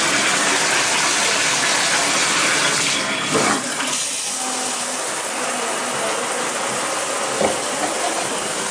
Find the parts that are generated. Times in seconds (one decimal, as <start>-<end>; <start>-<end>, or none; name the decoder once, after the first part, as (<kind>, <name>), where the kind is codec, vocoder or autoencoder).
none